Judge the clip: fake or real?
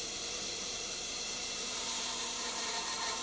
fake